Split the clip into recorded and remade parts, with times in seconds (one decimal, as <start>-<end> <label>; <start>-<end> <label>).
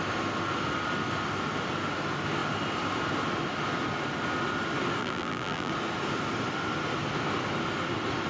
0.0-5.0 recorded; 5.0-5.7 remade; 5.7-8.3 recorded